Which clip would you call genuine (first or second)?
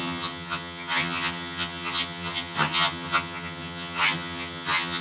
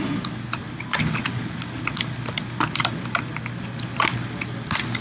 second